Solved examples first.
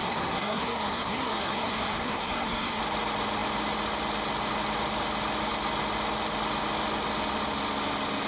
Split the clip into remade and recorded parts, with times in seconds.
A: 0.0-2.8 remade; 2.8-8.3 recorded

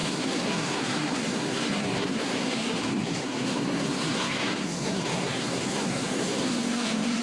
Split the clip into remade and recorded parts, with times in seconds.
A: 0.0-7.2 remade

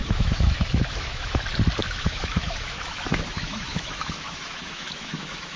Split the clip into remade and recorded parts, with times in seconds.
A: 0.0-1.4 remade; 1.4-1.8 recorded; 1.8-5.6 remade

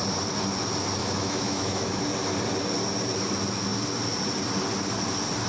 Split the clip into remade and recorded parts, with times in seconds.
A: 0.0-1.0 recorded; 1.0-2.0 remade; 2.0-5.5 recorded

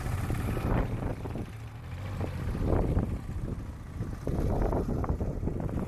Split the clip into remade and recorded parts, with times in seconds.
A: 0.0-1.1 remade; 1.1-4.6 recorded; 4.6-5.9 remade

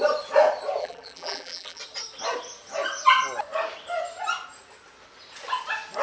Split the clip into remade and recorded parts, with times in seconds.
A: 0.0-0.8 recorded; 0.8-1.8 remade; 1.8-6.0 recorded

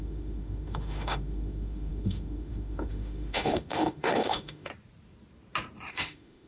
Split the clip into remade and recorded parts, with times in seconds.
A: 0.0-4.7 remade; 4.7-5.9 recorded; 5.9-6.5 remade